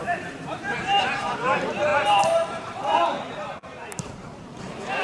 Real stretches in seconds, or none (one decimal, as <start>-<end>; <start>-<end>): none